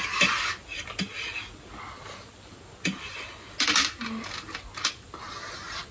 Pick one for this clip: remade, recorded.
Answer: recorded